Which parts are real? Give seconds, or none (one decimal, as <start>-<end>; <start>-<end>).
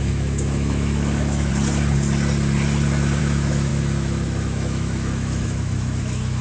1.5-3.2